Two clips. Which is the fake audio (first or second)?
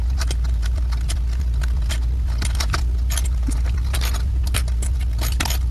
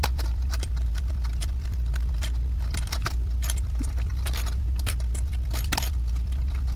second